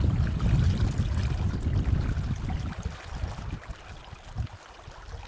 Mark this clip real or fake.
real